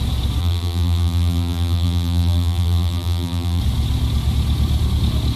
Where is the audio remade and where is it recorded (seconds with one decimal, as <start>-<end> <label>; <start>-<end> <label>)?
0.0-0.4 recorded; 0.4-3.6 remade; 3.6-5.4 recorded